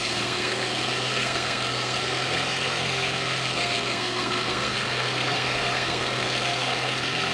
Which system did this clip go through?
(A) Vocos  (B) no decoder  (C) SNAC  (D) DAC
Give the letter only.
C